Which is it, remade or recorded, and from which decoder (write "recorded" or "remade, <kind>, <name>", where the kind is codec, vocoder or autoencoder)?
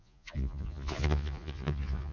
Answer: remade, vocoder, Vocos